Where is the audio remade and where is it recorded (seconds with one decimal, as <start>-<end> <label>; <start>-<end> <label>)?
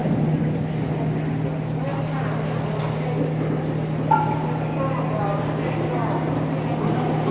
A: 0.0-0.9 remade; 0.9-7.3 recorded